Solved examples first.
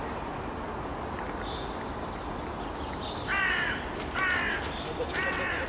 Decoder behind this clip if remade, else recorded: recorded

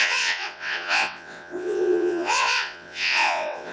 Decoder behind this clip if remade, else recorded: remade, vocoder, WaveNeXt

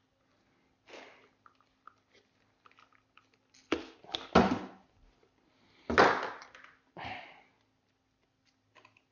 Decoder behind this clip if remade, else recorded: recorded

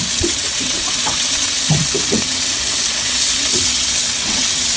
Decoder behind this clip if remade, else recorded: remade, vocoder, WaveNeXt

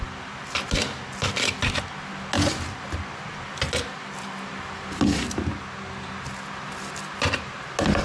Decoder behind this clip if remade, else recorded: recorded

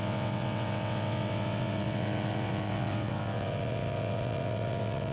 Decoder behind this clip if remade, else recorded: remade, vocoder, WaveNeXt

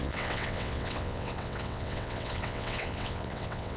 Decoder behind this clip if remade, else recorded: remade, vocoder, WaveNeXt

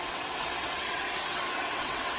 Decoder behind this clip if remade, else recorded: remade, vocoder, WaveNeXt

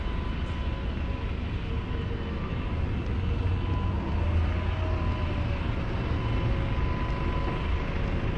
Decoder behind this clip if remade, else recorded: recorded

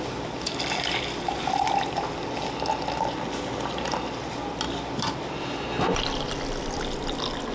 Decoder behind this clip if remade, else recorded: recorded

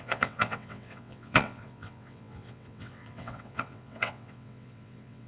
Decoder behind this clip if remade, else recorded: remade, vocoder, WaveNeXt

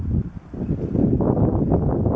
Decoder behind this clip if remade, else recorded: recorded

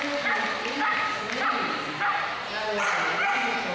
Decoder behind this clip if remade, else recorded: recorded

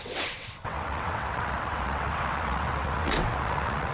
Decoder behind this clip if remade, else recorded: remade, vocoder, WaveNeXt